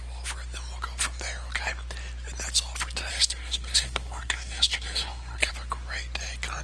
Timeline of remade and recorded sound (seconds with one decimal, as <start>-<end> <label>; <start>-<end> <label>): 0.0-3.1 recorded; 3.1-5.5 remade; 5.5-6.6 recorded